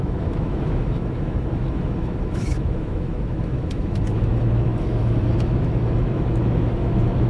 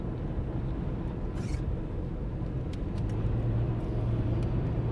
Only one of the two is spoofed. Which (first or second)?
first